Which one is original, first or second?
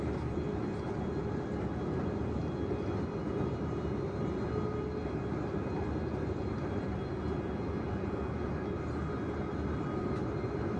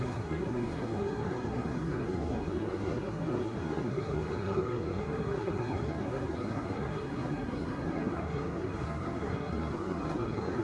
first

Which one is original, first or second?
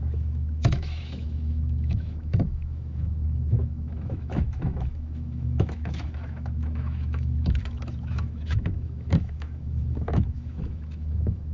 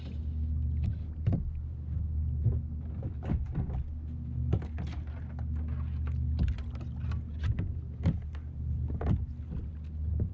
second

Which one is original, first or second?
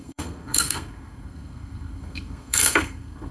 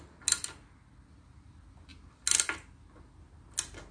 second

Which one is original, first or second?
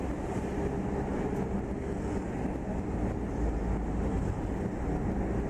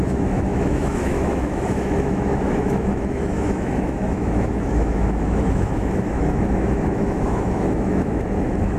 first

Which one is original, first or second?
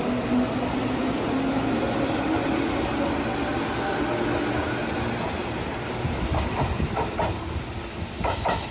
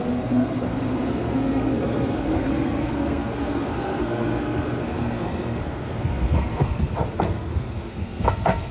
first